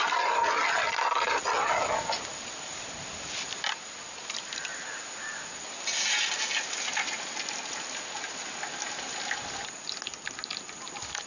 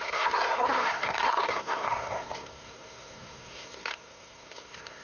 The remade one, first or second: second